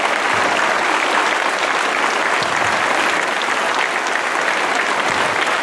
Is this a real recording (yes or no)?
yes